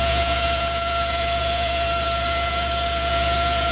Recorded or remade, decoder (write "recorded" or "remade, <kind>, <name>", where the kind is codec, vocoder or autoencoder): remade, vocoder, Vocos